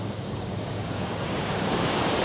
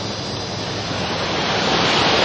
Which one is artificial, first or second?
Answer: first